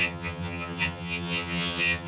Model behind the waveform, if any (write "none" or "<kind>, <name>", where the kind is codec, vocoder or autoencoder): vocoder, HiFi-GAN